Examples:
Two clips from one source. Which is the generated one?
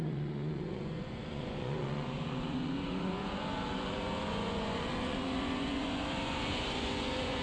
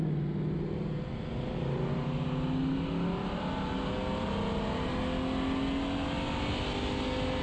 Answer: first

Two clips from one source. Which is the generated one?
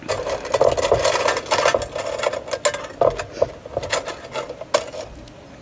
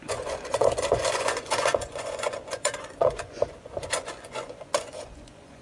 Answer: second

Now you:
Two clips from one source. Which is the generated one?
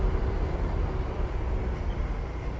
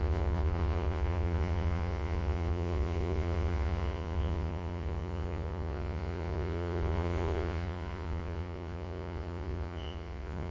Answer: second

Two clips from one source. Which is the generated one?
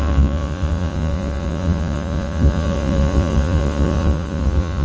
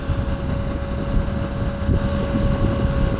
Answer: first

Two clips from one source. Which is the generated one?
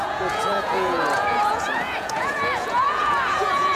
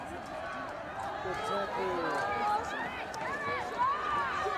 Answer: first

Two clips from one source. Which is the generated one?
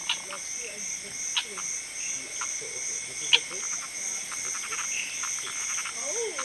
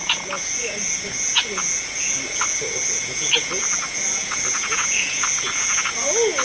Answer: second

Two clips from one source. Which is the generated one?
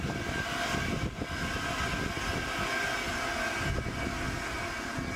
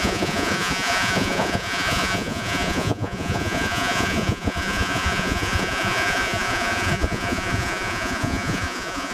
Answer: second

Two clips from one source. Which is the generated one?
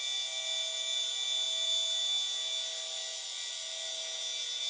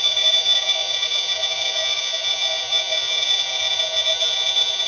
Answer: second